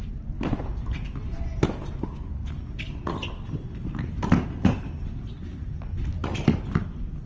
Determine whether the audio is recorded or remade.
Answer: recorded